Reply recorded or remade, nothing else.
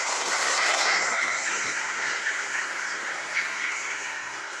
remade